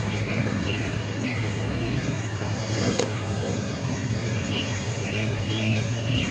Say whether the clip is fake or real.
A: fake